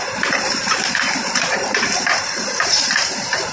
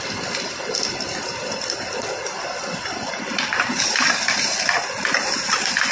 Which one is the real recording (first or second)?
second